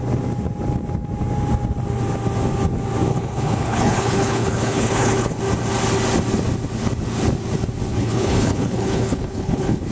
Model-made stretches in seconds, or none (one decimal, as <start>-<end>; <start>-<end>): 3.1-5.4; 7.9-9.9